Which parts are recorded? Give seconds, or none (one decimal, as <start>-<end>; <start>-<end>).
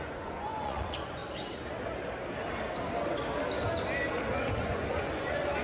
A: 1.2-4.6